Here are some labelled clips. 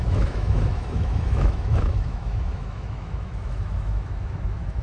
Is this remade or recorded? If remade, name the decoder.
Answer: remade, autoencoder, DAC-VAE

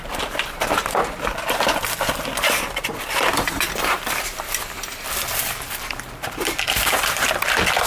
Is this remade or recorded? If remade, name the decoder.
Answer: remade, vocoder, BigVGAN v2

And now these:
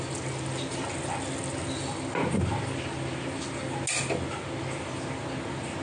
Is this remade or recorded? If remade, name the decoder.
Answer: recorded